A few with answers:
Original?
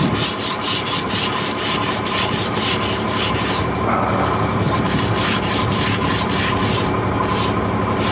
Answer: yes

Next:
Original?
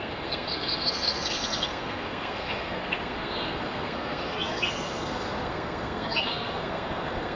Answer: no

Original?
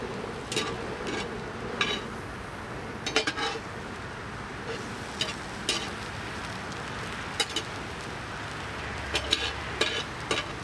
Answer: yes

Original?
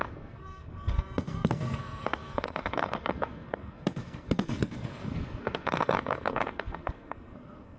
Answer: no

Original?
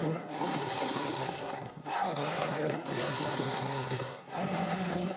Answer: no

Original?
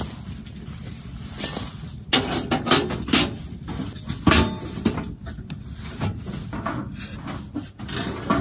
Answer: yes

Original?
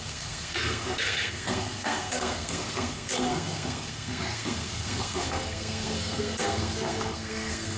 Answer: no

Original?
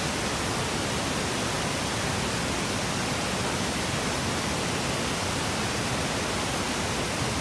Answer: yes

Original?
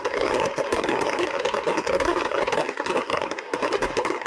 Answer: no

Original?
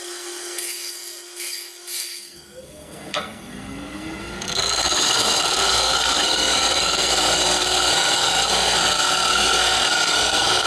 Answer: no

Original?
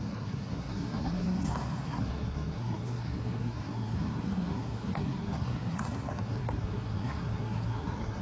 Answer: no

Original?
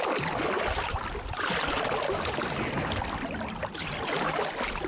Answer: yes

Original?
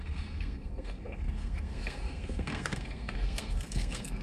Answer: no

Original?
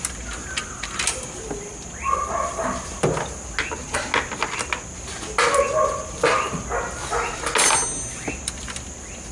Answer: yes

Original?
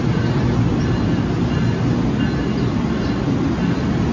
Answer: yes